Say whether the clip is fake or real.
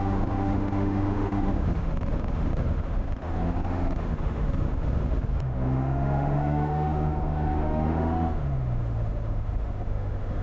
fake